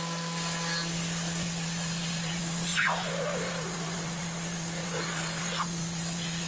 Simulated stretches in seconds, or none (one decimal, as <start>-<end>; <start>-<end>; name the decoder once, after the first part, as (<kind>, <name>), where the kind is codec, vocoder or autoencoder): 2.7-4.0 (vocoder, BigVGAN v2)